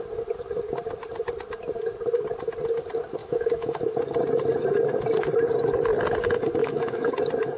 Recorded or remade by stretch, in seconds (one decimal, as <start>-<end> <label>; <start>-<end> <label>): 0.0-3.2 recorded; 3.2-3.8 remade; 3.8-6.6 recorded; 6.6-7.1 remade; 7.1-7.6 recorded